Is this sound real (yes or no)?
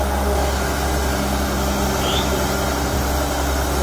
yes